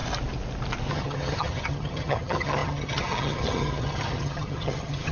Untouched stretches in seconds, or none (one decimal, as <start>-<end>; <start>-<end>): 0.0-0.9